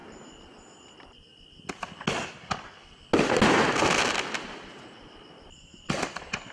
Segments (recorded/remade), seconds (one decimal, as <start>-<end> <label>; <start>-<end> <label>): 0.0-3.8 recorded; 3.8-6.5 remade